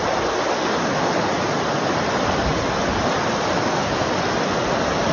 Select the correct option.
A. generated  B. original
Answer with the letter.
B